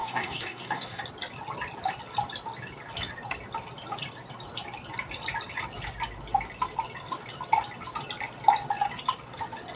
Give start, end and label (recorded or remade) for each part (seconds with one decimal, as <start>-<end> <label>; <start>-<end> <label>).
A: 0.0-1.0 remade; 1.0-9.8 recorded